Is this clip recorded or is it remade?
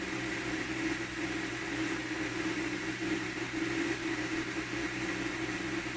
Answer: recorded